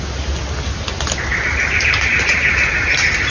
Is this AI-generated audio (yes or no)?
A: no